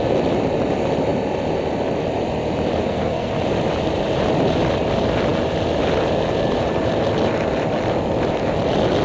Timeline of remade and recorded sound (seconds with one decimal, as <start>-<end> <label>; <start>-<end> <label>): 0.0-2.8 recorded; 2.8-3.3 remade; 3.3-9.0 recorded